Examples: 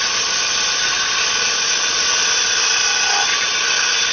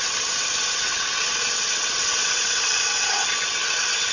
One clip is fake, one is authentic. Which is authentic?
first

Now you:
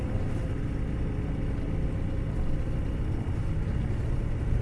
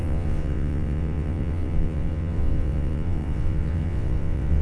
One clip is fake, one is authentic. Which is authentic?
first